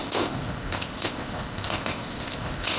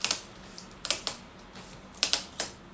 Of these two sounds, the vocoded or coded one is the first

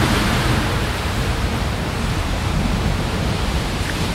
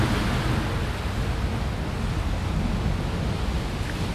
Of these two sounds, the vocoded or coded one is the first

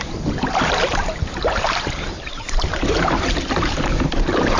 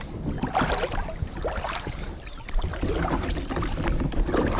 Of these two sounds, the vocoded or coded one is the first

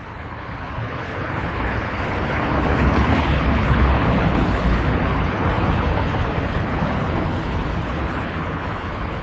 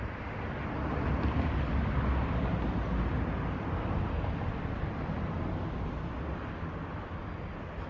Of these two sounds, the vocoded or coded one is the first